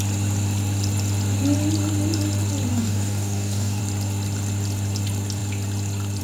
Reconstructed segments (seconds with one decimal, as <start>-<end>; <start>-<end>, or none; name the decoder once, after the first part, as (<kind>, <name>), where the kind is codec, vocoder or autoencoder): 2.7-3.8 (codec, DAC)